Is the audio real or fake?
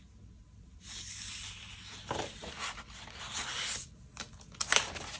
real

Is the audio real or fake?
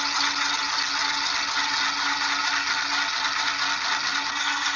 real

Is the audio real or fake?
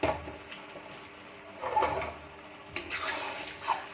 real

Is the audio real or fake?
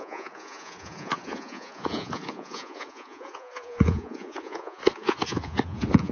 fake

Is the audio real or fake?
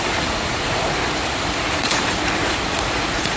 fake